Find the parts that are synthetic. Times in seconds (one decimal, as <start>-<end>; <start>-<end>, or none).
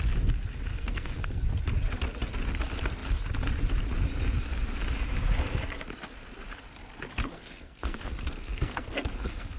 0.7-1.4; 7.2-9.6